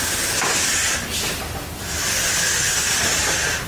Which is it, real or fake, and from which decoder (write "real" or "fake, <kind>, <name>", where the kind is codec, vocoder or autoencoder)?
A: real